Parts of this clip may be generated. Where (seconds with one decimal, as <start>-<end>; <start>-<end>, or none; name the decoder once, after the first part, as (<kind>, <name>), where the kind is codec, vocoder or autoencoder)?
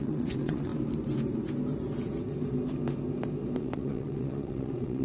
0.0-0.7 (vocoder, WaveNeXt); 3.6-5.0